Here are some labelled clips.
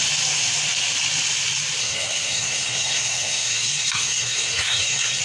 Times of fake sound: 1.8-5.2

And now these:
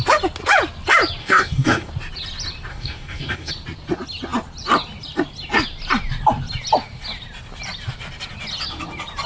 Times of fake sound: 1.2-1.9; 2.7-3.5

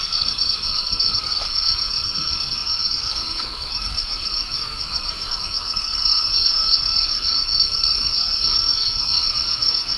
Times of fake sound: 0.0-10.0

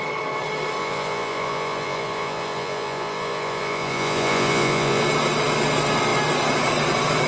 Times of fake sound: 0.8-5.0

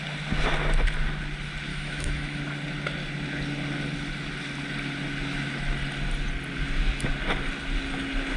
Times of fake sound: 1.7-2.4

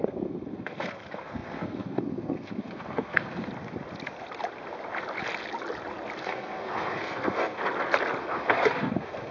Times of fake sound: 0.0-3.5; 6.2-7.6; 8.2-9.3

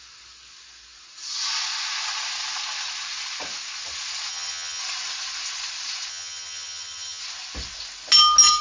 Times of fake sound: 4.3-4.8; 6.1-7.2

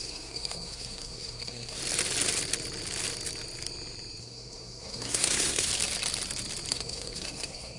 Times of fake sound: 0.0-1.8; 4.2-5.7; 6.7-7.8